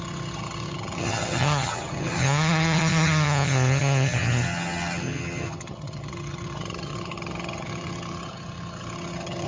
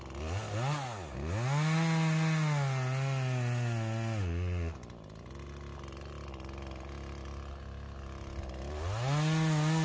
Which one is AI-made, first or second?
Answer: first